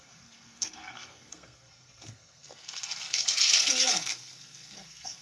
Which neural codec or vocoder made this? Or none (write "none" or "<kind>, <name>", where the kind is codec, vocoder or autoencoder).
codec, SNAC